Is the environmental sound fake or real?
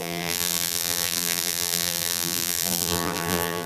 fake